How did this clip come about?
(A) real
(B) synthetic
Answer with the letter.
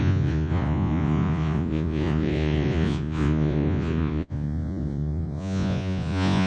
B